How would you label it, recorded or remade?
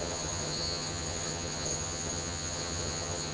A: remade